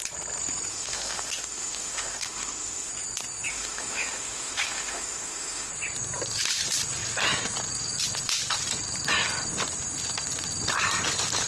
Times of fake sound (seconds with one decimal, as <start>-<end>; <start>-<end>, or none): 0.7-2.9; 3.5-5.7